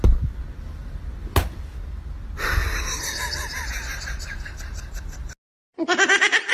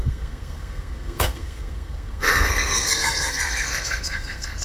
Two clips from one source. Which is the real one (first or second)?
first